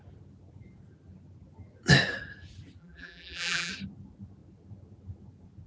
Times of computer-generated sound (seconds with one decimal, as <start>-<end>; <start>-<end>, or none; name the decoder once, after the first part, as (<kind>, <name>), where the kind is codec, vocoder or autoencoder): 2.8-3.7 (vocoder, BigVGAN v2)